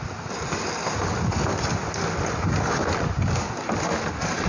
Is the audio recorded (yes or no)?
yes